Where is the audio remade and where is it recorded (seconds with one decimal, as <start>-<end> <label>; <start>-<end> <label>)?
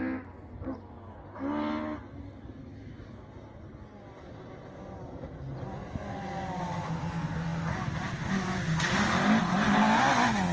0.0-10.5 recorded